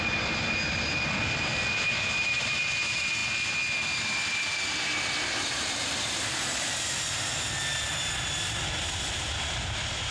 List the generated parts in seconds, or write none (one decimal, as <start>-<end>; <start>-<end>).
none